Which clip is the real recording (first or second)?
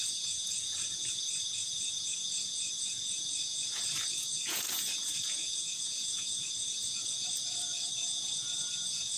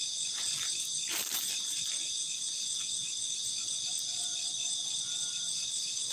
second